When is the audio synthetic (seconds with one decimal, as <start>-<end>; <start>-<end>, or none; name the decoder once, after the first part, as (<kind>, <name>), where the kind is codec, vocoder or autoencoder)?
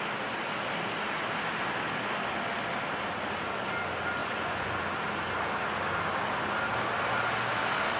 4.2-4.8 (vocoder, Vocos)